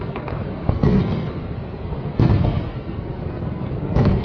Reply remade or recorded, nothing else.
remade